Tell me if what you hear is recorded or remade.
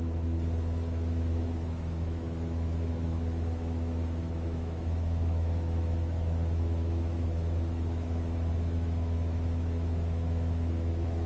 remade